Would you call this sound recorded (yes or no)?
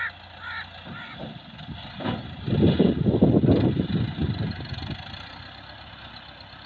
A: yes